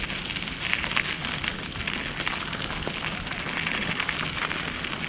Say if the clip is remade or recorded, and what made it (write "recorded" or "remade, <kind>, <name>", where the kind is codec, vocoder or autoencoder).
recorded